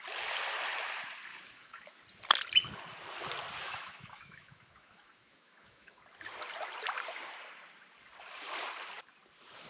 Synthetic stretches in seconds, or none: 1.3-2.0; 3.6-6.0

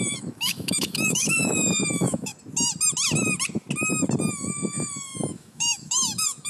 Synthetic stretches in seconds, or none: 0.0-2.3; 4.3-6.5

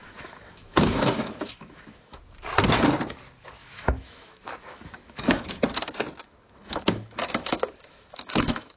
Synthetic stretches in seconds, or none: 0.0-2.2; 3.6-5.6; 6.2-8.8

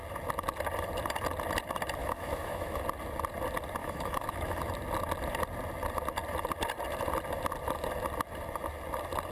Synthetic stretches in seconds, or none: 2.0-2.8; 3.8-4.7

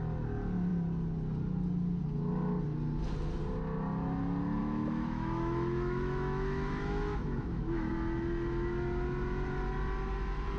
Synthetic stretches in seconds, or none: 4.6-7.9

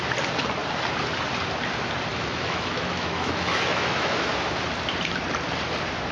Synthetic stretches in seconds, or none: 2.1-4.3